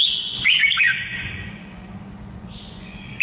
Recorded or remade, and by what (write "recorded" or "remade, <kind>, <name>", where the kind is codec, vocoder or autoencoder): remade, vocoder, Vocos